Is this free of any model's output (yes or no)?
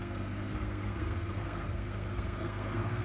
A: no